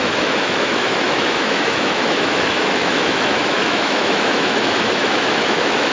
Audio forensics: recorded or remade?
remade